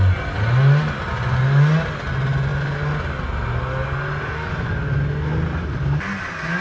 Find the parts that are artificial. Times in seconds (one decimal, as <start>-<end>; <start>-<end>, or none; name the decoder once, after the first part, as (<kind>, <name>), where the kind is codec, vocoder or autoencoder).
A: none